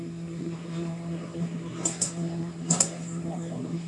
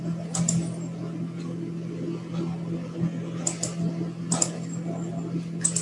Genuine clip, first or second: second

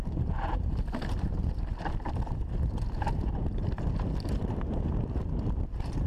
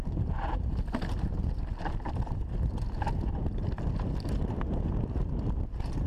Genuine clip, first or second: second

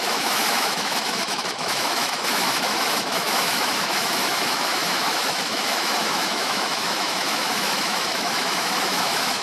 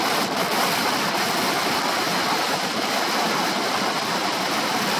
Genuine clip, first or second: second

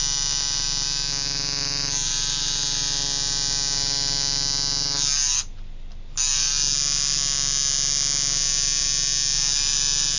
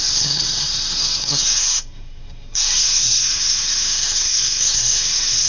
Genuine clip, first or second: first